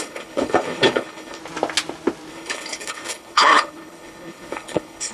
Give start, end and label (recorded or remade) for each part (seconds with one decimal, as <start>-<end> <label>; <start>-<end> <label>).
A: 0.0-1.4 remade; 1.4-2.3 recorded; 2.3-5.1 remade